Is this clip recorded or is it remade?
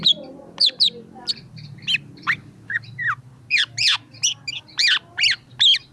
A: recorded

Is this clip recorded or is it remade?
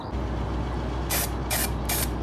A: recorded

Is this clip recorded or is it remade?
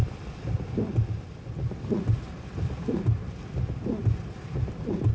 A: remade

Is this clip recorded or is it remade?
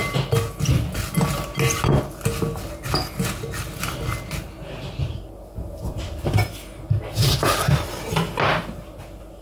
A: recorded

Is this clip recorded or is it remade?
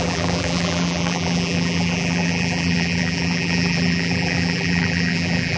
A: remade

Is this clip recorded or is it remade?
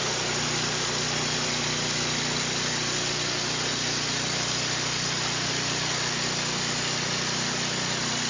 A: recorded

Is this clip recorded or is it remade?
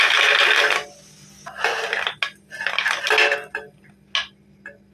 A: recorded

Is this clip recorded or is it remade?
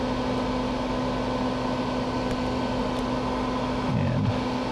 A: recorded